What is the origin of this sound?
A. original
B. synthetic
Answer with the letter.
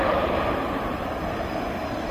A